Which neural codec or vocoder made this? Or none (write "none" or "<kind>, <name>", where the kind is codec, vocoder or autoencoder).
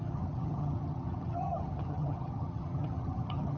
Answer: vocoder, HiFi-GAN